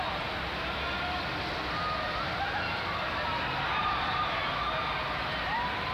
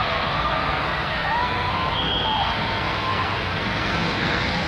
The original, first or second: first